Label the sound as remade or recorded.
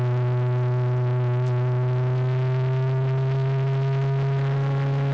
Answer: recorded